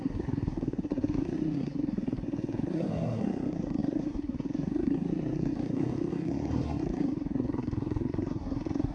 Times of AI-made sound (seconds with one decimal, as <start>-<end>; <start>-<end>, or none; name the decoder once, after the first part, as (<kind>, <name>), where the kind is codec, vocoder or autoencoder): 0.0-8.9 (codec, SNAC)